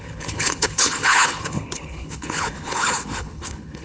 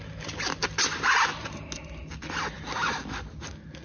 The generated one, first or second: first